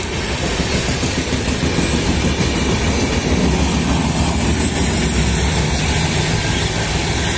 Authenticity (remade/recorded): recorded